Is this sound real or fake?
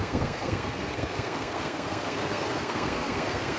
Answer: fake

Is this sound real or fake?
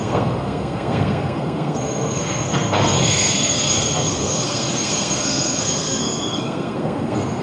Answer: fake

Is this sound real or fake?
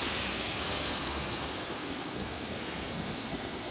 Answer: fake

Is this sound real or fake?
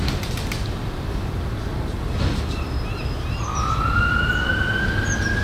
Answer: real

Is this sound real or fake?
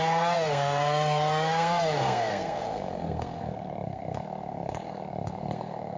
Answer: fake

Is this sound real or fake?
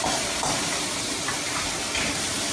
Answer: real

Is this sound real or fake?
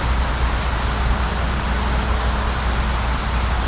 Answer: real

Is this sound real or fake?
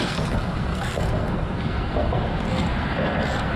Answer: fake